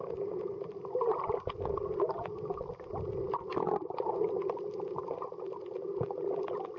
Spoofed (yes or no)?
no